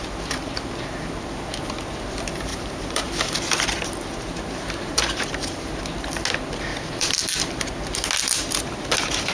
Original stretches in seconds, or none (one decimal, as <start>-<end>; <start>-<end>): 0.0-2.5; 5.8-6.7; 7.7-9.3